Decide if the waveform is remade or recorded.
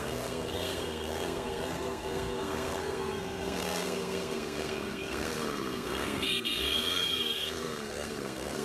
remade